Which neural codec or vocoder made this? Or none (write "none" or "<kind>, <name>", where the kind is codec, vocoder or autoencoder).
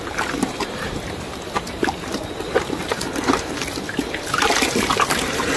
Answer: vocoder, BigVGAN v2